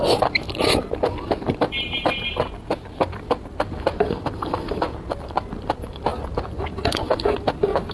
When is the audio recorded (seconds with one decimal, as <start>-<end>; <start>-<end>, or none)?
0.0-7.9